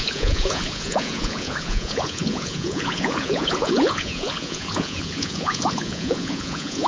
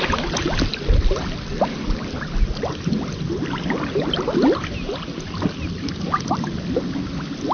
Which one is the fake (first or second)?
first